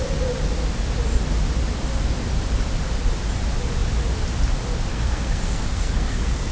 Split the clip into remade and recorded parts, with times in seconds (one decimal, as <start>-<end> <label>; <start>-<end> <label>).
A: 0.0-4.9 recorded; 4.9-6.5 remade

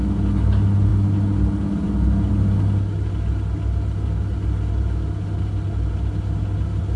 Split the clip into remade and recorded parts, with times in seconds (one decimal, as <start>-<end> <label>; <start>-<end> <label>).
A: 0.0-7.0 recorded

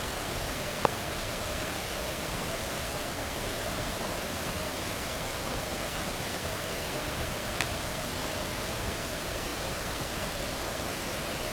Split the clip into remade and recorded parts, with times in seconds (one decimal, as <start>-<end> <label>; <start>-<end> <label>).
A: 0.0-11.5 remade

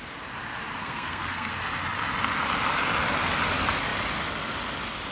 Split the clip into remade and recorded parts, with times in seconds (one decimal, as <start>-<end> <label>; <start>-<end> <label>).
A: 0.0-0.8 recorded; 0.8-1.5 remade; 1.5-5.1 recorded

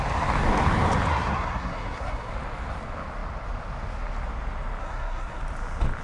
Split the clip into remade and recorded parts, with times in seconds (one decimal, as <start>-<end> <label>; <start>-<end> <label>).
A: 0.0-1.1 recorded; 1.1-2.3 remade; 2.3-4.8 recorded; 4.8-5.4 remade; 5.4-6.0 recorded